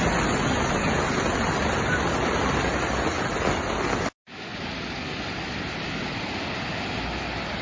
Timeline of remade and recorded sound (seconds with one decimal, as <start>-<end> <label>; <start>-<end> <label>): 0.0-7.6 recorded

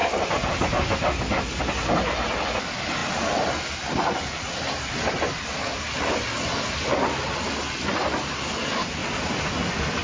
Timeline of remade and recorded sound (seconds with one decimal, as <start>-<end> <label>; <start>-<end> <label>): 0.0-10.0 recorded

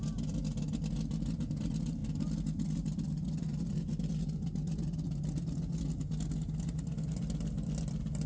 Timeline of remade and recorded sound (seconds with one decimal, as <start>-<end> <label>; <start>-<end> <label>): 0.0-8.3 recorded